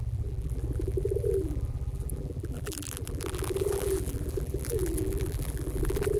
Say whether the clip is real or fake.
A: fake